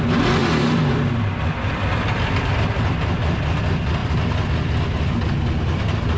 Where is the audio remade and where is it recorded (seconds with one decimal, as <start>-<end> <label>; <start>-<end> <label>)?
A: 0.0-6.2 recorded